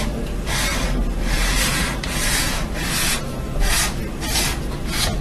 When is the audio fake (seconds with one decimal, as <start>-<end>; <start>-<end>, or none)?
0.7-3.7